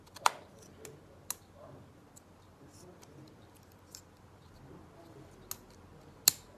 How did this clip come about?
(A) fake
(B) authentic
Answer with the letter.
B